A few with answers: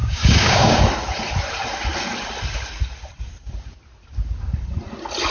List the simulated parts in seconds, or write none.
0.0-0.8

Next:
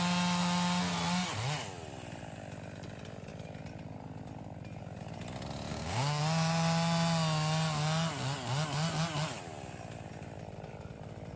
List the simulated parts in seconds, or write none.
5.7-6.2

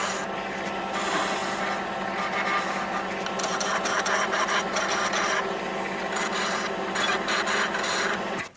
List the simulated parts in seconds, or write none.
none

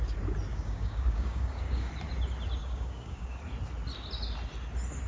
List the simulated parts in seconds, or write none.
0.5-1.9; 2.6-3.4

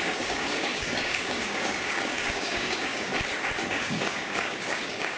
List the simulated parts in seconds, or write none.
0.0-3.1; 3.6-5.2

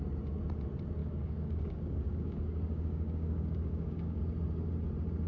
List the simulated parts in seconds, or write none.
1.0-4.2

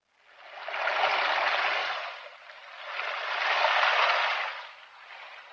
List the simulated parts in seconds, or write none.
none